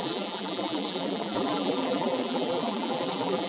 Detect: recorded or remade remade